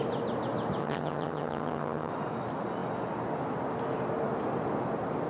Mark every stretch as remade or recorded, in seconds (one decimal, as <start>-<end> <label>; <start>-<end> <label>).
0.0-0.8 recorded; 0.8-2.1 remade; 2.1-5.3 recorded

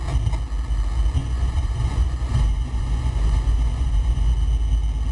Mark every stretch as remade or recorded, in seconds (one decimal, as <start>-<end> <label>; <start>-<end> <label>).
0.0-1.2 recorded; 1.2-4.3 remade; 4.3-5.1 recorded

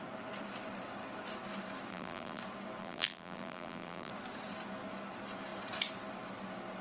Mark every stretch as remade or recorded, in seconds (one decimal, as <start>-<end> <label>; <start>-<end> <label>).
0.0-1.9 recorded; 1.9-2.4 remade; 2.4-2.8 recorded; 2.8-4.1 remade; 4.1-6.8 recorded

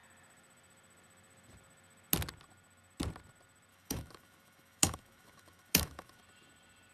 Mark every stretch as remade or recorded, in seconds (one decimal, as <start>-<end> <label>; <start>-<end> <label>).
0.0-3.7 recorded; 3.7-6.2 remade; 6.2-6.9 recorded